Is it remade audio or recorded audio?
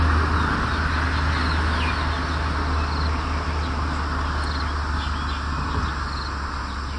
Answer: recorded